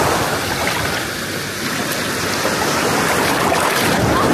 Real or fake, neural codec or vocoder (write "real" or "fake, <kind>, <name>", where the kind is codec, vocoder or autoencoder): real